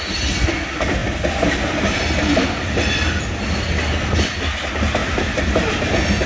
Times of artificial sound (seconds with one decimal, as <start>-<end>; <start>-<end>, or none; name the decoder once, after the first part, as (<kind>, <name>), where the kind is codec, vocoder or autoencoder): none